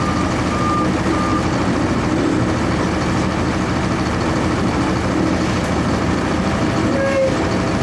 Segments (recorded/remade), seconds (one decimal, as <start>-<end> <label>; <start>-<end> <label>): 0.0-7.8 recorded